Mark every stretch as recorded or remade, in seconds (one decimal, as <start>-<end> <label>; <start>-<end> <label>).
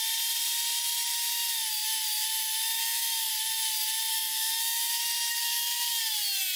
0.0-2.8 recorded; 2.8-3.3 remade; 3.3-4.1 recorded; 4.1-5.0 remade; 5.0-5.4 recorded; 5.4-6.0 remade; 6.0-6.6 recorded